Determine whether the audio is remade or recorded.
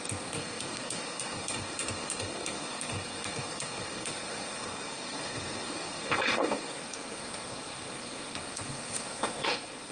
remade